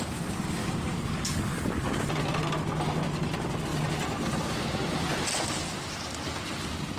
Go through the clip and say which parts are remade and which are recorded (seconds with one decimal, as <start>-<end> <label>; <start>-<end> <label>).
0.0-0.6 recorded; 0.6-1.4 remade; 1.4-7.0 recorded